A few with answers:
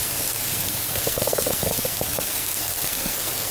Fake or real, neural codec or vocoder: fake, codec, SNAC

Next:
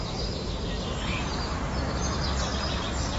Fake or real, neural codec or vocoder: fake, vocoder, BigVGAN v2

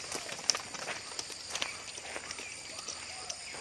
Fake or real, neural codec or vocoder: real